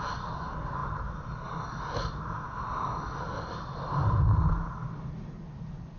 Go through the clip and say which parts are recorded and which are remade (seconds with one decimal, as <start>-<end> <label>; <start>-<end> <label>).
0.0-6.0 recorded